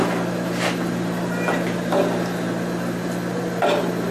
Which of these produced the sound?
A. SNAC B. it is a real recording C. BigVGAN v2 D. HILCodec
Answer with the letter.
B